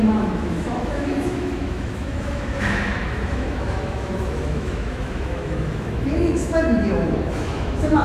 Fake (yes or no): yes